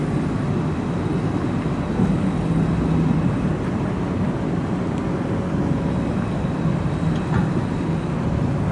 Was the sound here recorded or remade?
recorded